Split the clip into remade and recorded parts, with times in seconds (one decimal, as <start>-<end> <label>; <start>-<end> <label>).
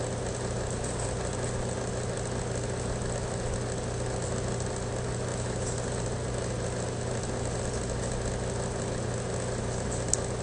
0.0-10.4 recorded